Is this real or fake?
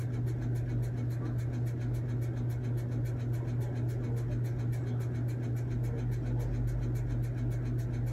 real